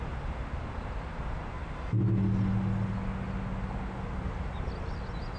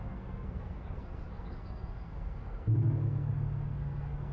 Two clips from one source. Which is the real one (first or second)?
first